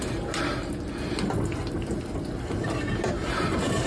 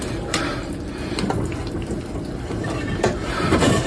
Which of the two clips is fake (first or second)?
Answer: second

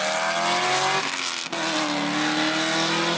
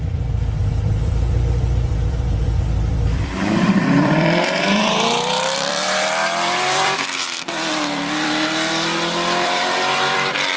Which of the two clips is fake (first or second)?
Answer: second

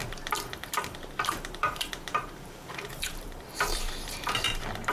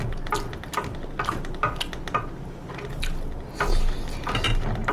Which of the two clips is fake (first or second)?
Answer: first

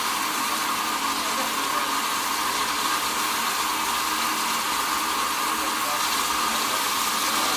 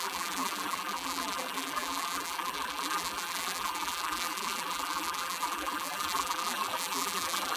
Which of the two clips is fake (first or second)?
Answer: second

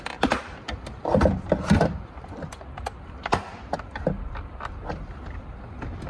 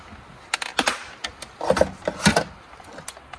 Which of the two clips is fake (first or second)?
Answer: first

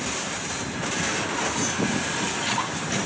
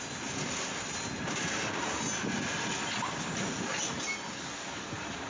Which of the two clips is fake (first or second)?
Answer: first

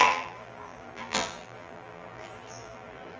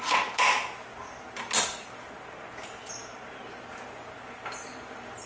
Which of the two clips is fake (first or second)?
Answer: first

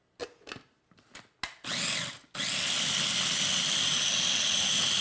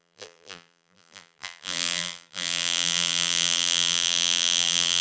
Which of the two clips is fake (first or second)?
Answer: second